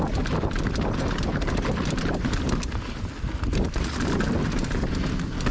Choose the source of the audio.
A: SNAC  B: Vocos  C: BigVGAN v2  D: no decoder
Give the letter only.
D